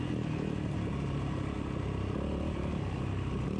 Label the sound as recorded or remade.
recorded